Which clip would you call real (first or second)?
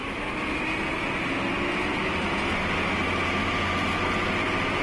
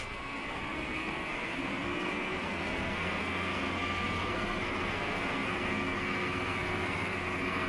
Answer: first